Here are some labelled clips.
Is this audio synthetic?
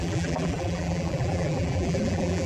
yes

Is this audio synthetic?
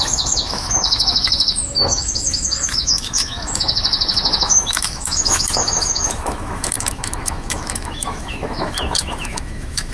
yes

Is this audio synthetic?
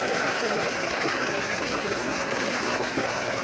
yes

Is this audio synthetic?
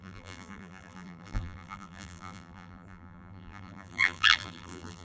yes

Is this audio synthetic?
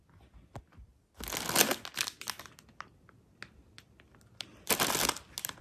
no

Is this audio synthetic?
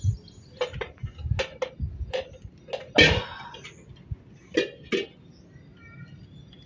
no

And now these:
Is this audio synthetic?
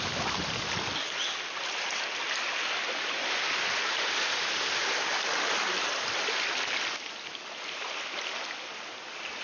no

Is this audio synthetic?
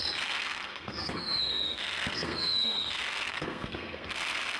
yes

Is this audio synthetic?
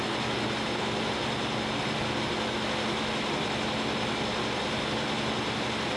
no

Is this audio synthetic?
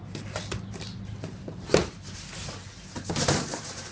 no